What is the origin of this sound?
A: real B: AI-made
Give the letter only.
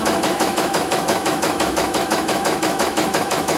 B